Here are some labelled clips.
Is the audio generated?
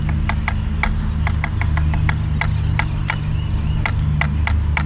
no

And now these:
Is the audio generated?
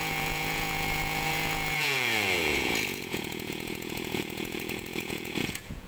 yes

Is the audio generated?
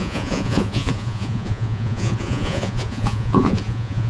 yes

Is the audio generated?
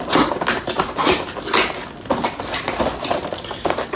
no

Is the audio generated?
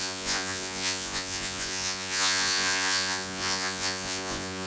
yes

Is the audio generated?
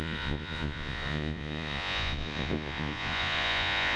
yes